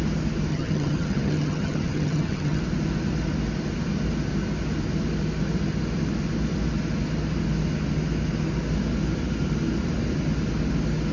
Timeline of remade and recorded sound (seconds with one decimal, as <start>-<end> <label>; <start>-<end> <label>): 0.0-0.5 recorded; 0.5-2.6 remade; 2.6-11.1 recorded